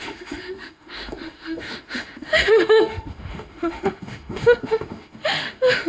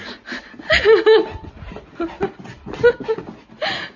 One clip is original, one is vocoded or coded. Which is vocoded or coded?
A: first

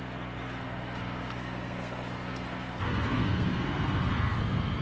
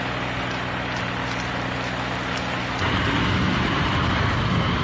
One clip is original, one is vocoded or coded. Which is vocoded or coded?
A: first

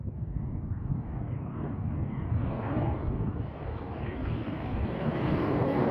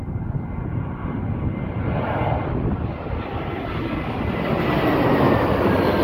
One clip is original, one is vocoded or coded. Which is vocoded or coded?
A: first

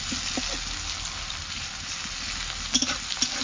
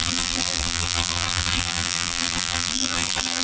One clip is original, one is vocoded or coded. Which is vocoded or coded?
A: second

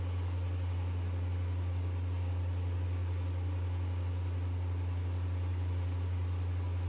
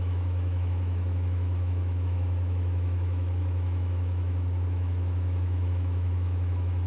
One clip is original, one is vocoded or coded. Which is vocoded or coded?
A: second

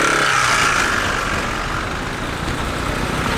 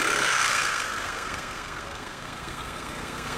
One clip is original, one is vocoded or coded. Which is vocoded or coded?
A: second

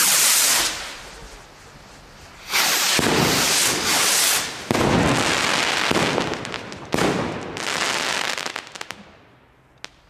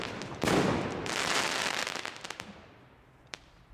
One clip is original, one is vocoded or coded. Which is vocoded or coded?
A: second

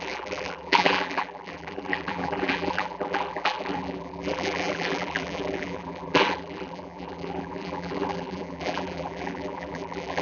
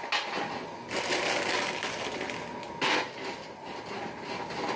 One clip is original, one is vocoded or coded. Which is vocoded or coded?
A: first